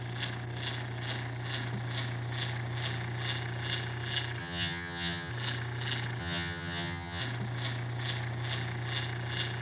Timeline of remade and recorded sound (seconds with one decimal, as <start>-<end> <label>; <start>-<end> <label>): 0.0-4.4 recorded; 4.4-5.3 remade; 5.3-6.2 recorded; 6.2-7.2 remade; 7.2-9.6 recorded